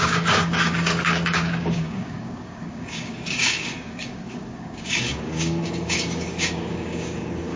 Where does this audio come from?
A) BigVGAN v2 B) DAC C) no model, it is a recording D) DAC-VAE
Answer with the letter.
B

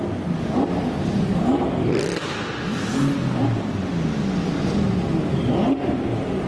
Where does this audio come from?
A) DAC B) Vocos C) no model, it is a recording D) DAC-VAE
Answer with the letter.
C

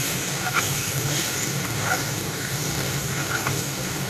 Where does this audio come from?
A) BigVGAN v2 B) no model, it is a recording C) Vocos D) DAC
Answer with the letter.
D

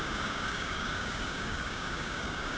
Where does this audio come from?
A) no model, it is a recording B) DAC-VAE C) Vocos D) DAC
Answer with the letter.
D